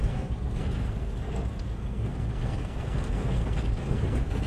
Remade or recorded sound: remade